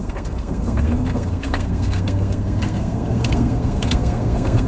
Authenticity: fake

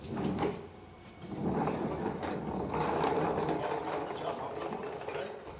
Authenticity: real